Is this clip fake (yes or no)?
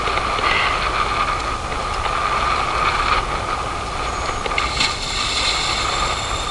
no